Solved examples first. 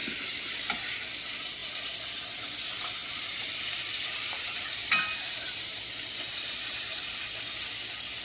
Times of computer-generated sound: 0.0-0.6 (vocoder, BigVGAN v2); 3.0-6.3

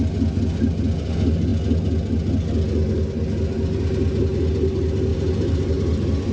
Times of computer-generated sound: 5.1-5.7 (vocoder, BigVGAN v2)

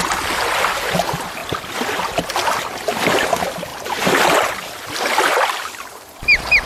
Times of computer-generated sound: 0.0-1.4 (vocoder, BigVGAN v2); 2.8-6.7